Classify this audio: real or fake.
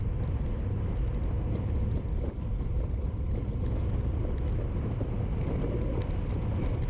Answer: real